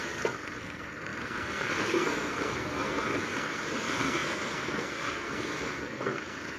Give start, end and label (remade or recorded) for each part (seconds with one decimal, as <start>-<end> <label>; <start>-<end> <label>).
0.0-6.6 remade